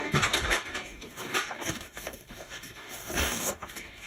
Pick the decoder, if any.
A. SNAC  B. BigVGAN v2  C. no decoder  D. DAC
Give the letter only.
D